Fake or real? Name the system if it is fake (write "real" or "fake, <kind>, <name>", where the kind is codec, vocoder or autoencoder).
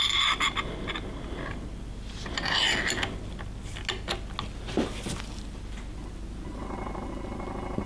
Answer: real